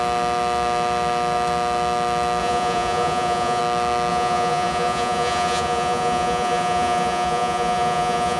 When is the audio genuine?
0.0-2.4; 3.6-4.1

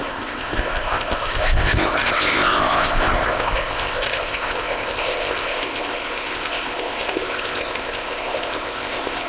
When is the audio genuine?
none

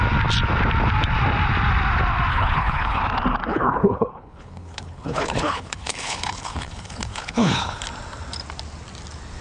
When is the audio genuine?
0.0-2.3; 3.0-3.5; 7.8-9.4

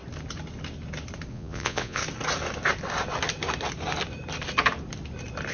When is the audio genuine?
0.0-1.3; 2.0-5.5

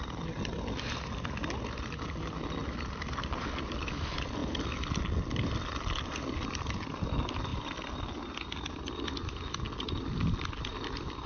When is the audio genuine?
0.0-11.3

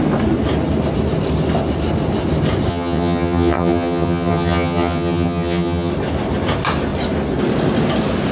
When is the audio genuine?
0.0-2.7; 5.9-8.3